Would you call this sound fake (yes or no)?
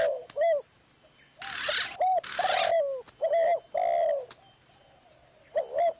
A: no